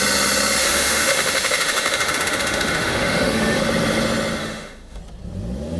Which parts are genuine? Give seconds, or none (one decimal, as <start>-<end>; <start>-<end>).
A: 0.0-0.6; 3.6-4.4; 5.0-5.8